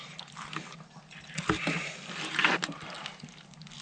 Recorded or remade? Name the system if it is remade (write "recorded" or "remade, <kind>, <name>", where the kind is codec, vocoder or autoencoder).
recorded